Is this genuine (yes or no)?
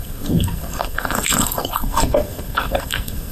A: no